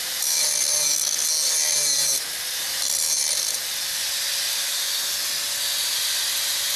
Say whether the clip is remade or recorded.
recorded